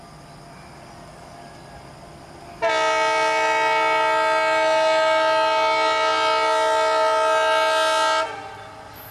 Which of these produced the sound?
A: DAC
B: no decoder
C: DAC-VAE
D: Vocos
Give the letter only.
B